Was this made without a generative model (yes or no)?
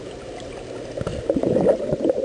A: yes